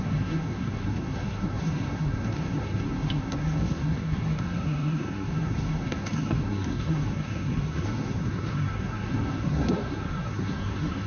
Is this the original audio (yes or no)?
no